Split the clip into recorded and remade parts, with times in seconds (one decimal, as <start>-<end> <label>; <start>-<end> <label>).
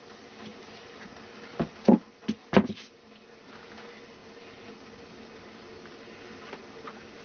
0.0-7.2 recorded